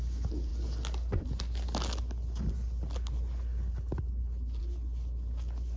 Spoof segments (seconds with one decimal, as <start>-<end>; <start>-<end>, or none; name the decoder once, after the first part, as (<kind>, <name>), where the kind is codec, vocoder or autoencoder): none